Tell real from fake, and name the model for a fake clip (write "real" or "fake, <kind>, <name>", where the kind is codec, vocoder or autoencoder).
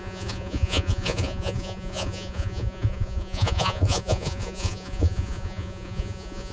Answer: fake, vocoder, Vocos